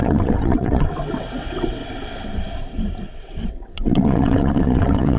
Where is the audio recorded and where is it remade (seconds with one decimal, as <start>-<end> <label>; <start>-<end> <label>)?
0.0-1.8 remade; 1.8-3.1 recorded; 3.1-5.2 remade